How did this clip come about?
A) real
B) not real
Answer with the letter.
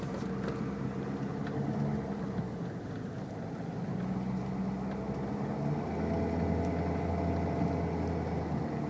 A